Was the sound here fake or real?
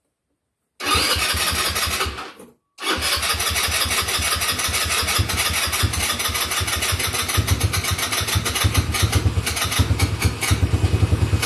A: real